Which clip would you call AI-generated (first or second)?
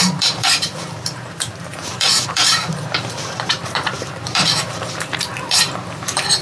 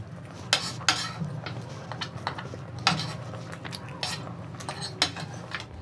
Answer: first